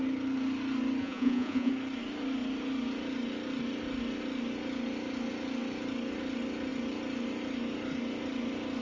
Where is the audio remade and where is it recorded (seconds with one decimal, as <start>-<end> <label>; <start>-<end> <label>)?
0.0-1.0 recorded; 1.0-1.7 remade; 1.7-8.8 recorded